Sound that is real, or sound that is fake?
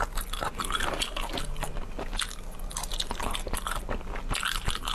real